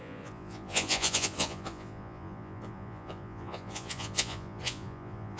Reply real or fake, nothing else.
fake